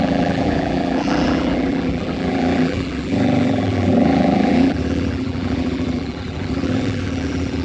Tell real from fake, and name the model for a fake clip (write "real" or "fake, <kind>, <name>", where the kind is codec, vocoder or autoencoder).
fake, vocoder, BigVGAN v2